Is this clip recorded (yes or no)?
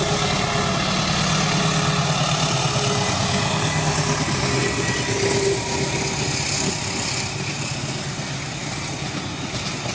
yes